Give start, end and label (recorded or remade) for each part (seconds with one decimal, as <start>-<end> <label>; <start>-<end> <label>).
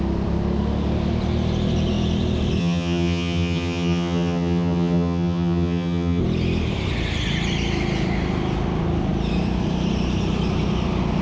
0.0-2.6 recorded; 2.6-6.2 remade; 6.2-11.2 recorded